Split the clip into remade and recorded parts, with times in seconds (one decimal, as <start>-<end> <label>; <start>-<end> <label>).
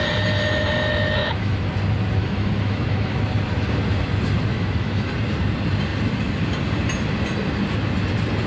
0.0-1.2 recorded; 1.2-1.7 remade; 1.7-2.2 recorded; 2.2-3.2 remade; 3.2-4.5 recorded; 4.5-5.1 remade; 5.1-8.5 recorded